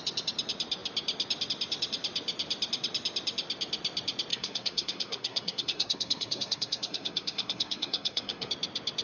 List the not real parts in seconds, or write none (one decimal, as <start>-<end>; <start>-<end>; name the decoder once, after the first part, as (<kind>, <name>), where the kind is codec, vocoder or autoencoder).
4.3-8.5 (codec, SNAC)